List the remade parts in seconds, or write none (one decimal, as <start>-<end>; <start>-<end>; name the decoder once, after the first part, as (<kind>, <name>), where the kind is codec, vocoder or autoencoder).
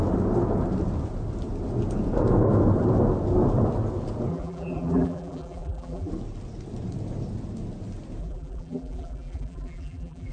4.3-6.1 (vocoder, BigVGAN v2); 8.2-10.3